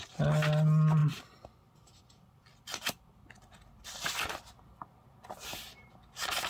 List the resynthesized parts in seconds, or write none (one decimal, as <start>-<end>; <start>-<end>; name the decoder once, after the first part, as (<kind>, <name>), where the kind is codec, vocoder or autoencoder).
1.0-4.5 (vocoder, BigVGAN v2)